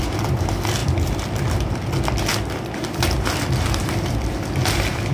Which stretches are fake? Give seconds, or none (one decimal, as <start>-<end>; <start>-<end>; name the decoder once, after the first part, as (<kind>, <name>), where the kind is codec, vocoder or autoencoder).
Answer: none